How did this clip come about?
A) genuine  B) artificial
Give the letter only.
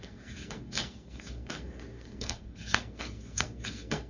B